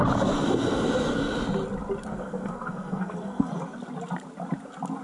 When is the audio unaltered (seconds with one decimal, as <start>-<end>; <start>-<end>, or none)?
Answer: 0.0-2.1; 3.5-5.0

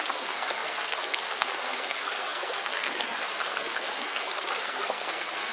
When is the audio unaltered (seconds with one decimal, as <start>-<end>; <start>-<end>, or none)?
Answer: none

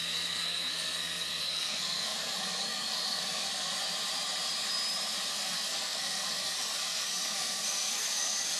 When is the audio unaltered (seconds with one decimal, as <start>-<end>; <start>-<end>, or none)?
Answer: 3.7-5.3

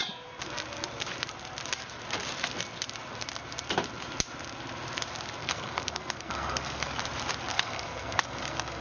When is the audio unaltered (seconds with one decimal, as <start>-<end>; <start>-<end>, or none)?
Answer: 0.0-5.4; 7.0-7.5

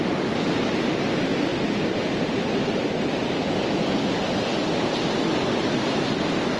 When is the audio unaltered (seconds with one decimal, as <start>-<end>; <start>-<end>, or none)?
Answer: 0.0-6.6

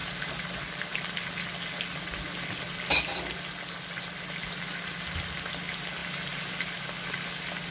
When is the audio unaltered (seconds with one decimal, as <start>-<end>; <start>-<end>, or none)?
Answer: 0.0-7.7

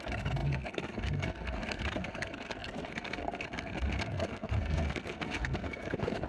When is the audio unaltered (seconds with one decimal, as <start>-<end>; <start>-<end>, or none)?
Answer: none

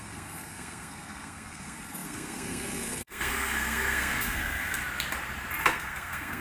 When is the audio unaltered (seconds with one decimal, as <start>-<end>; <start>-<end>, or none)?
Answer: 4.8-5.6